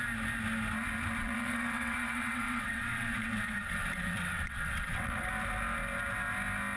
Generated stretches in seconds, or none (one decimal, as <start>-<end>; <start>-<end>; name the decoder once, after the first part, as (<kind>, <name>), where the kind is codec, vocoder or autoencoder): 1.2-5.3 (vocoder, WaveNeXt)